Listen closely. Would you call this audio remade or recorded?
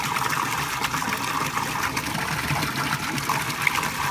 recorded